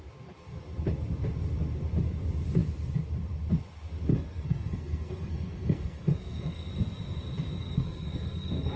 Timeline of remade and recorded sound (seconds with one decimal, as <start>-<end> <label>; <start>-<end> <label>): 0.0-4.1 recorded; 4.1-6.7 remade; 6.7-7.6 recorded; 7.6-8.8 remade